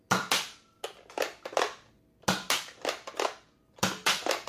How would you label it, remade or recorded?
recorded